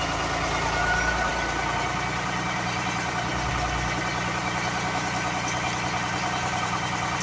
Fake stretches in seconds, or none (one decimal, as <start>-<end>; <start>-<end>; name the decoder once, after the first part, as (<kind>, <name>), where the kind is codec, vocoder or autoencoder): none